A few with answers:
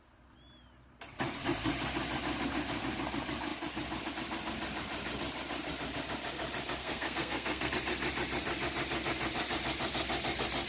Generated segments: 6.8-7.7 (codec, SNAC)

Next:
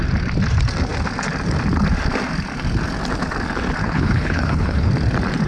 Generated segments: 3.8-4.9 (codec, HILCodec)